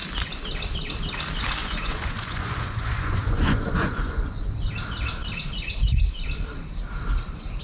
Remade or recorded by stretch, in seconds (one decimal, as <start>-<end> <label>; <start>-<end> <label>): 0.0-1.6 recorded; 1.6-4.4 remade; 4.4-7.6 recorded